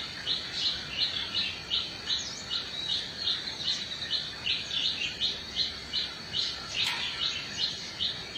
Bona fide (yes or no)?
yes